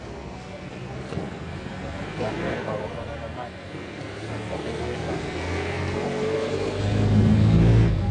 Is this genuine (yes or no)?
no